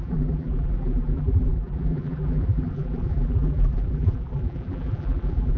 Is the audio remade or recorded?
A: remade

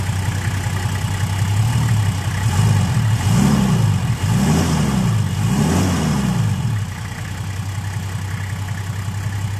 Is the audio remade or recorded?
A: recorded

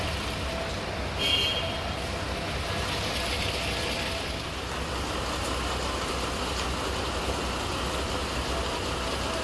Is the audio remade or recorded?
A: recorded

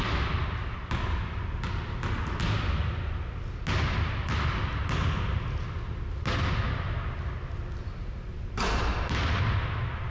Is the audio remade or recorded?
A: recorded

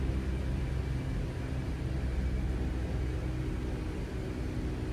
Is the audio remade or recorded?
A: recorded